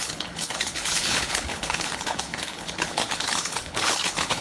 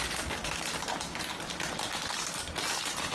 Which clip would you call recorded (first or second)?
second